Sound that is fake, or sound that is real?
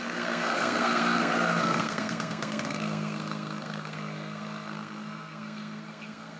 fake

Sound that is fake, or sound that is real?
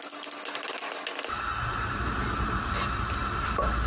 real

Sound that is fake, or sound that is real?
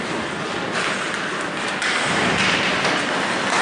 real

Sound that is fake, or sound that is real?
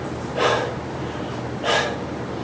real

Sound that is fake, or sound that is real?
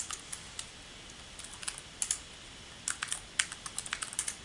real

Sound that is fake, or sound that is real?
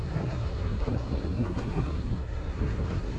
fake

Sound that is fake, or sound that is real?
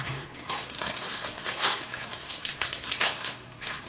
fake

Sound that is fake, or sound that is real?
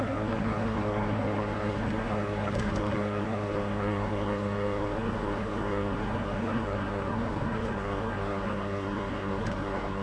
fake